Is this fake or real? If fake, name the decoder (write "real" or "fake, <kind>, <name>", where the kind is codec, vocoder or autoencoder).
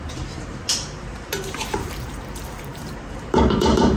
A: fake, vocoder, BigVGAN v2